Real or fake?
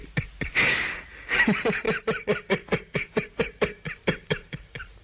real